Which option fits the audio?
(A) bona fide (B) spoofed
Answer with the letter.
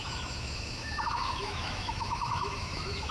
B